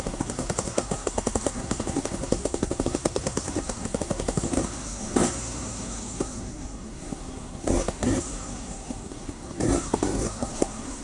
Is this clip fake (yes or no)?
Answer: yes